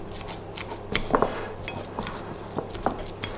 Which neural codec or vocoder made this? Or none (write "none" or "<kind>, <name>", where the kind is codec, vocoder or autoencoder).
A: none